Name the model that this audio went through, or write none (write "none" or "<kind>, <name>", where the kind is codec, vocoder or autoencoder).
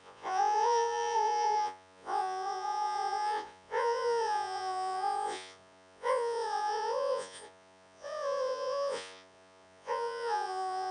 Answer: vocoder, Vocos